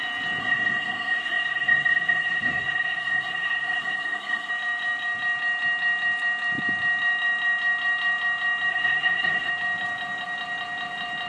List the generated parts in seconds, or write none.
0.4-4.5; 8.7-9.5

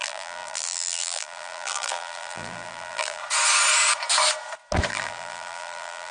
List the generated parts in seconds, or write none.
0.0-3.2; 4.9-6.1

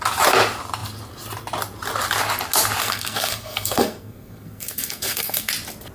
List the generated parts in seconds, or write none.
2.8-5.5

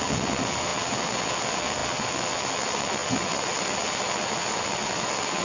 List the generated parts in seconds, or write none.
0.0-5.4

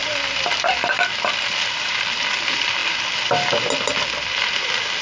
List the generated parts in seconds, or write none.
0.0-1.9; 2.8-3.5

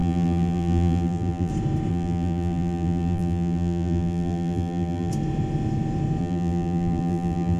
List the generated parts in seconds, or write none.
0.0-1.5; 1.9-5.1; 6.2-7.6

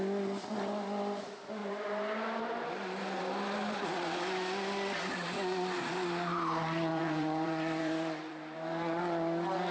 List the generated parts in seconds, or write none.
1.6-3.2; 6.9-9.0